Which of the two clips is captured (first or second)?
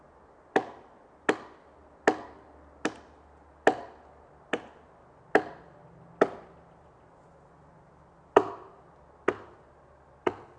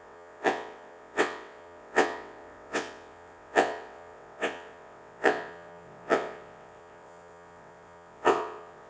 first